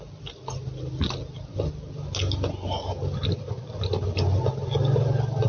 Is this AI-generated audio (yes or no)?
no